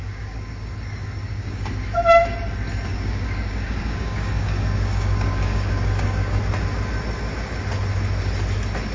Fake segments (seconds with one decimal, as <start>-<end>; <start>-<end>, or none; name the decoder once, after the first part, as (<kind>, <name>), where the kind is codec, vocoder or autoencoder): 0.0-1.7 (codec, DAC); 2.9-6.4